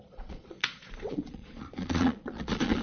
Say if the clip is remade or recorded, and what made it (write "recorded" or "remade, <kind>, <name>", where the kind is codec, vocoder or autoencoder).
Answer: remade, vocoder, Vocos